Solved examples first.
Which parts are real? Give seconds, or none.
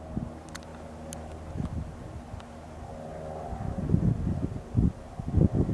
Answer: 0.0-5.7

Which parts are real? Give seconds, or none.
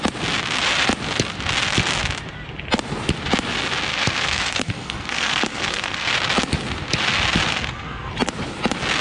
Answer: 0.0-3.9; 6.1-7.5; 8.1-9.0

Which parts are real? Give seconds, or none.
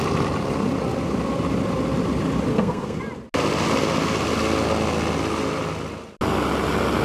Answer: 0.0-2.5; 3.0-7.0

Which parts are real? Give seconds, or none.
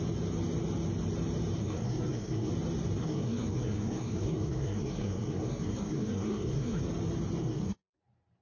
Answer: 0.0-1.6; 2.5-3.0; 6.8-7.4; 8.0-8.4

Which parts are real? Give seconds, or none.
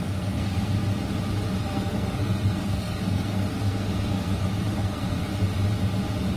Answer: 0.8-1.6; 5.3-6.4